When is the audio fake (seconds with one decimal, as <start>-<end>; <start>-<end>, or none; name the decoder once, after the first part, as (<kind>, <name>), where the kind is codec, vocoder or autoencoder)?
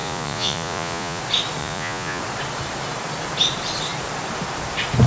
0.0-1.2 (vocoder, Vocos); 1.6-2.2